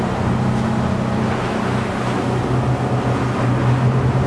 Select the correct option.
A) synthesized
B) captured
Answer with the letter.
B